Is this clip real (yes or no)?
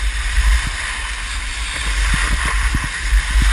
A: yes